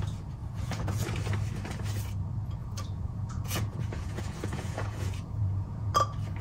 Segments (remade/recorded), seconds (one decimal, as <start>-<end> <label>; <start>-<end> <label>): 0.0-0.4 recorded; 0.4-1.1 remade; 1.1-2.6 recorded; 2.6-5.9 remade; 5.9-6.4 recorded